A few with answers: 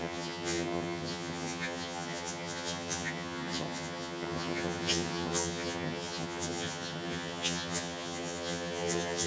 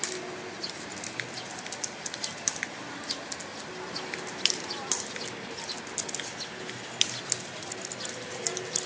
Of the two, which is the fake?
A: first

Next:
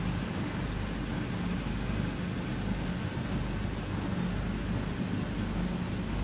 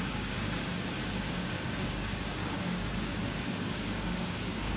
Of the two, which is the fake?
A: second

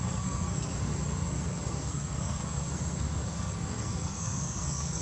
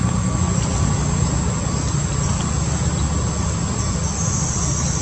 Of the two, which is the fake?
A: first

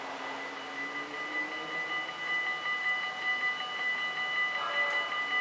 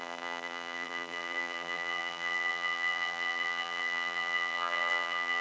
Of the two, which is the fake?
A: second